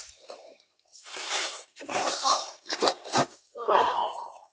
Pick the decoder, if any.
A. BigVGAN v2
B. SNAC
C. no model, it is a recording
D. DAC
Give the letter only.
B